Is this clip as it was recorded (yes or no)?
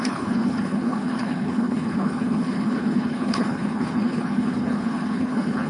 no